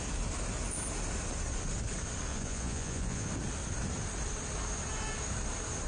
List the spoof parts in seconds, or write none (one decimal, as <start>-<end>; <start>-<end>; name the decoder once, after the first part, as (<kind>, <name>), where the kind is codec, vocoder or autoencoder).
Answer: 2.3-3.3 (vocoder, Vocos)